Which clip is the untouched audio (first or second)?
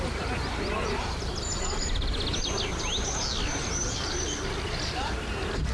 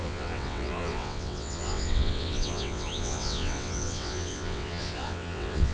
first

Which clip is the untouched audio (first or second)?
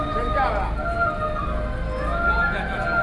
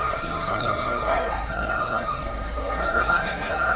first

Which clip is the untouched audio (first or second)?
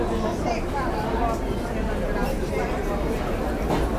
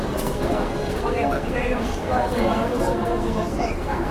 first